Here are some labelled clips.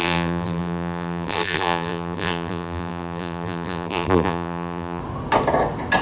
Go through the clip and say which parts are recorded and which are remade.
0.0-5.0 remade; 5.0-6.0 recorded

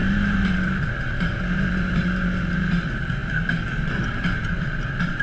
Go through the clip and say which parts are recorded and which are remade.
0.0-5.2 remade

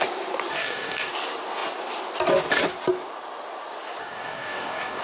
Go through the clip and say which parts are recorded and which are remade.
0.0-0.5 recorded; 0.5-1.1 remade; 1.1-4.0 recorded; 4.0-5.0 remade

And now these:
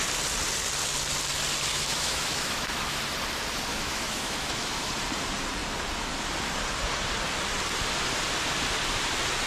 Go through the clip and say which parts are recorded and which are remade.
0.0-1.7 recorded; 1.7-3.0 remade; 3.0-3.7 recorded; 3.7-4.9 remade; 4.9-9.5 recorded

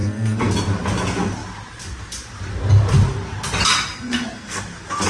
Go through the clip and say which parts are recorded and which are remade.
0.0-0.5 remade; 0.5-3.9 recorded; 3.9-4.6 remade; 4.6-5.1 recorded